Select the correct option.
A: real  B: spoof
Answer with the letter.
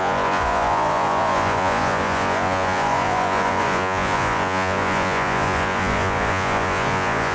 B